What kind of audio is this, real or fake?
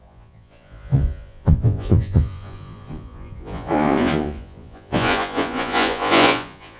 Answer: fake